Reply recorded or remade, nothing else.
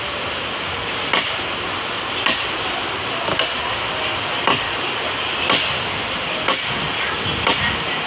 recorded